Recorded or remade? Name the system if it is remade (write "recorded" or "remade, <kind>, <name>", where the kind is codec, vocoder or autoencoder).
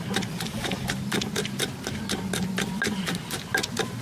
recorded